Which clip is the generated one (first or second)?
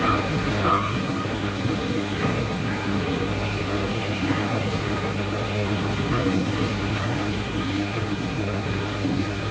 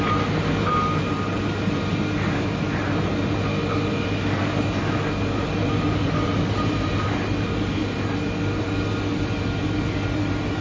first